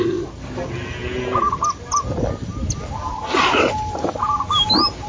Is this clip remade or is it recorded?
recorded